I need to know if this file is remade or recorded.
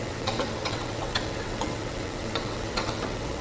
remade